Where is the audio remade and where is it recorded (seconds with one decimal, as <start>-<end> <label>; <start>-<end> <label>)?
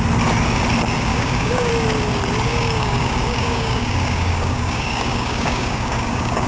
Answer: 0.0-1.1 recorded; 1.1-1.7 remade; 1.7-2.5 recorded; 2.5-6.5 remade